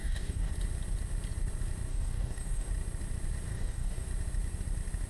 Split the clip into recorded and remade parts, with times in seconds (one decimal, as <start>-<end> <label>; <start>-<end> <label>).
0.0-0.5 remade; 0.5-1.9 recorded; 1.9-2.7 remade; 2.7-3.5 recorded; 3.5-4.1 remade; 4.1-5.1 recorded